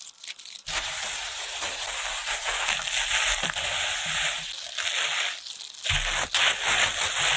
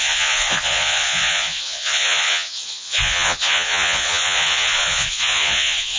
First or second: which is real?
first